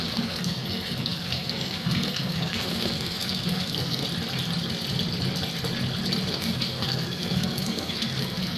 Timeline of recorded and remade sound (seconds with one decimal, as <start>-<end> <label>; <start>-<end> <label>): 0.0-4.0 remade; 4.0-6.3 recorded; 6.3-8.6 remade